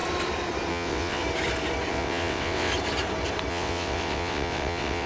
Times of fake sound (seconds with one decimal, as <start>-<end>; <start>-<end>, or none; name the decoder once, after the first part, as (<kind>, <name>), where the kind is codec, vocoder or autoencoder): 0.7-1.2 (vocoder, WaveNeXt); 1.9-2.7; 3.5-5.1